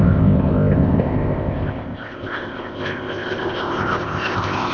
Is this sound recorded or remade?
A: remade